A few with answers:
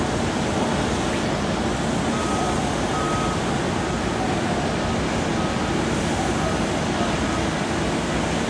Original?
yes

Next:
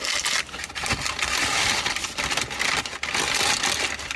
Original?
yes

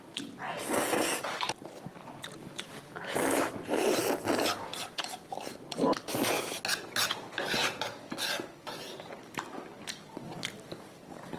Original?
yes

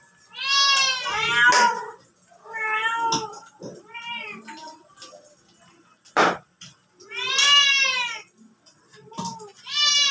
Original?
yes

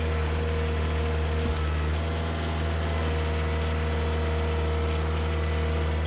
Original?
yes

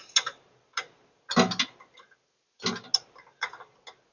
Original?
yes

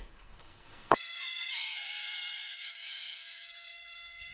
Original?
no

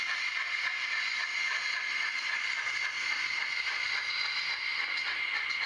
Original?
yes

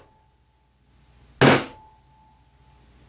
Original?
yes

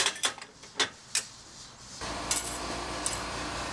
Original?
yes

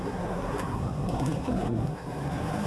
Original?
no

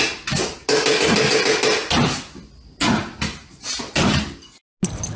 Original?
yes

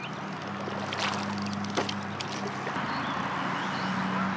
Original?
yes